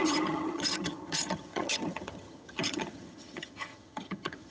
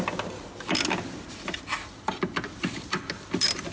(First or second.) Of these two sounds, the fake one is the first